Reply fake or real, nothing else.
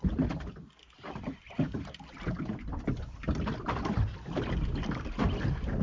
real